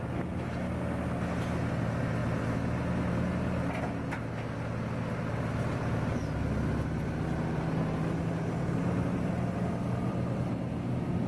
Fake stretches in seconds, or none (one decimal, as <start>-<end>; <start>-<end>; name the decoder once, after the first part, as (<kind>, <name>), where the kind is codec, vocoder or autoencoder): none